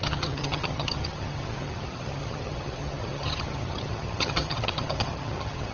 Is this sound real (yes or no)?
no